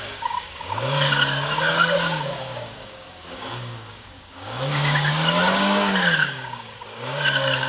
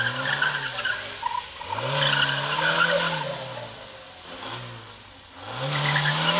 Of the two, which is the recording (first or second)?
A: second